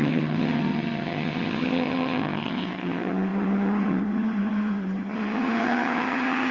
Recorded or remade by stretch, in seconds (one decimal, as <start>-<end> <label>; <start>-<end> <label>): 0.0-6.5 remade